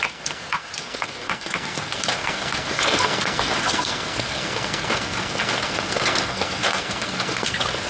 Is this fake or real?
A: fake